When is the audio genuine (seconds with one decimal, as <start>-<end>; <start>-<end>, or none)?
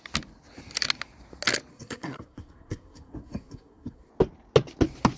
0.0-1.7; 4.1-5.2